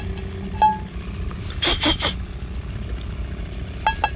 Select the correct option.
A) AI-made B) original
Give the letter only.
B